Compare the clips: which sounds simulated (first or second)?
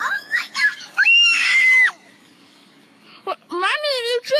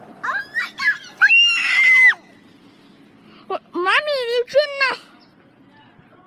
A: first